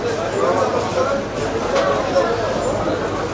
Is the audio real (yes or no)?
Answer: yes